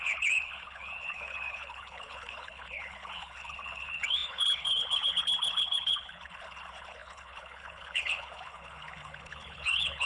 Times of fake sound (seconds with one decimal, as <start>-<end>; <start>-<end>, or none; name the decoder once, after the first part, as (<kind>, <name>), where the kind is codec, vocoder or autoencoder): 0.0-10.1 (codec, HILCodec)